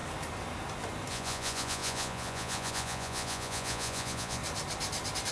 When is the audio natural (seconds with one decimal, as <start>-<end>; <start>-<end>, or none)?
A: 0.0-1.1; 4.4-5.3